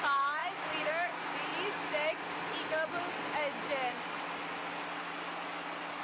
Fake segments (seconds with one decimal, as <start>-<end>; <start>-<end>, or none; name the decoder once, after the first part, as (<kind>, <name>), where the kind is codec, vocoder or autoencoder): none